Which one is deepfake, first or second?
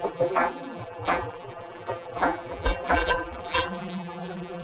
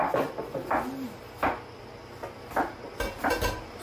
first